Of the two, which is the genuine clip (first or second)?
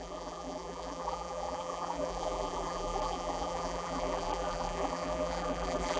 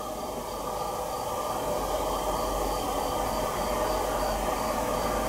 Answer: second